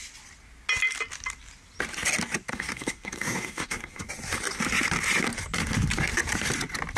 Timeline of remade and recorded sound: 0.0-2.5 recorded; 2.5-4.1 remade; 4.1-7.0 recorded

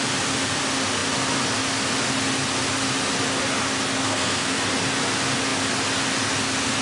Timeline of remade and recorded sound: 0.0-4.0 recorded; 4.0-4.6 remade; 4.6-6.8 recorded

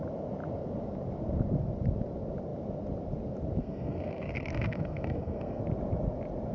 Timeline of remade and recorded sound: 0.0-3.6 recorded; 3.6-5.6 remade; 5.6-6.5 recorded

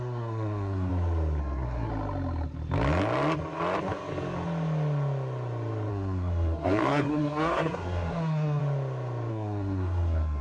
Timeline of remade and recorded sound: 0.0-0.9 remade; 0.9-1.4 recorded; 1.4-1.9 remade; 1.9-5.9 recorded; 5.9-8.6 remade; 8.6-9.3 recorded; 9.3-10.4 remade

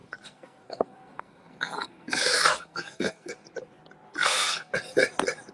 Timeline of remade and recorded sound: 0.0-3.3 remade; 3.3-4.1 recorded; 4.1-4.7 remade; 4.7-5.5 recorded

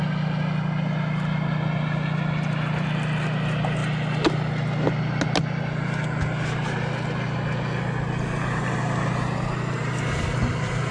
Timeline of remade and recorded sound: 0.0-10.9 recorded